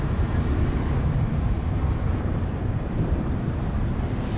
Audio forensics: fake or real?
fake